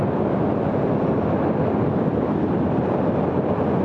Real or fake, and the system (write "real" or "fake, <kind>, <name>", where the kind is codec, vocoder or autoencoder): real